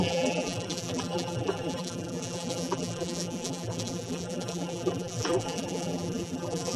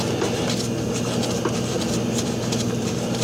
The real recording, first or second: second